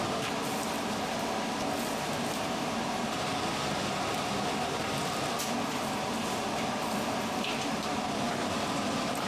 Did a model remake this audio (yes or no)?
no